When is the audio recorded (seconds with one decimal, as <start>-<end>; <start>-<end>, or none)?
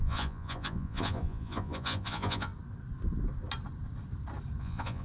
2.5-4.6